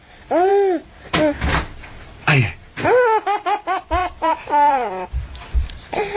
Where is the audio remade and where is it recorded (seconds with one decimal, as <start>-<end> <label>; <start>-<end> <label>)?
0.0-4.0 recorded; 4.0-6.2 remade